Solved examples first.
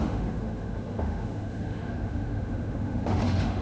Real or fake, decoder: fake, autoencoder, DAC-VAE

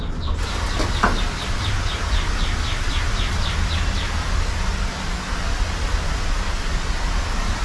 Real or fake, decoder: real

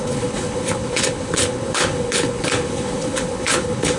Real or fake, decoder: fake, codec, HILCodec